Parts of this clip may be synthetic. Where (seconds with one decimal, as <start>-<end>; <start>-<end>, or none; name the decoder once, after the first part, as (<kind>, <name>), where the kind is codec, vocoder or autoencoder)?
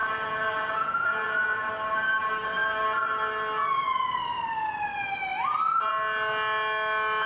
0.0-1.7 (vocoder, Vocos)